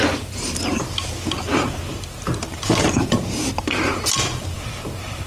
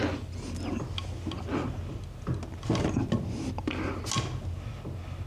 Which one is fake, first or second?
first